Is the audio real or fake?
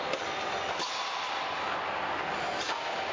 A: real